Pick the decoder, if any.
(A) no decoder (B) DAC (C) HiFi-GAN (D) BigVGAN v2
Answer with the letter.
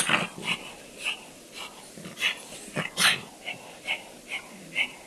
A